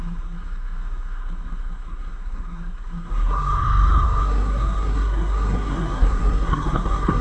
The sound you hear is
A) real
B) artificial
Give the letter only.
B